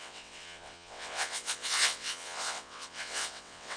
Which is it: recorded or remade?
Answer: remade